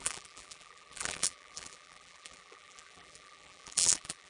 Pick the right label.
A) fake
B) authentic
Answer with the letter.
A